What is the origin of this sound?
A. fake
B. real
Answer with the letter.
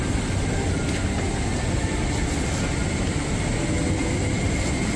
B